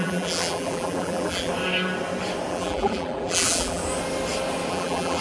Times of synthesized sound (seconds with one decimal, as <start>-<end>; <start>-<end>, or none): 0.0-1.5; 2.5-3.8; 4.7-5.2